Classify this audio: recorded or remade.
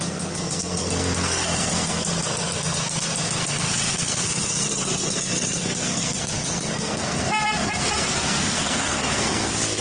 remade